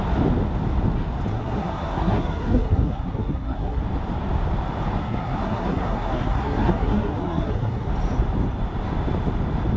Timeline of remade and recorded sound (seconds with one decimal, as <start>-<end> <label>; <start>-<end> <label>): 0.0-1.3 recorded; 1.3-3.8 remade; 3.8-5.0 recorded; 5.0-7.9 remade; 7.9-9.8 recorded